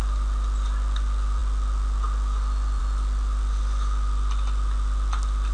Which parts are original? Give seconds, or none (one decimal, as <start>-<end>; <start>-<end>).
0.0-5.5